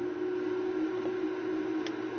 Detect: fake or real real